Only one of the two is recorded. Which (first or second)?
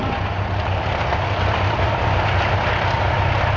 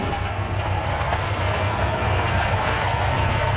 first